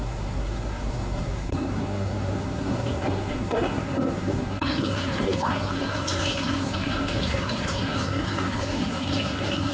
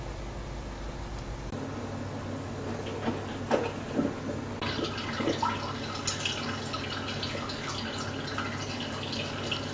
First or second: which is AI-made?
first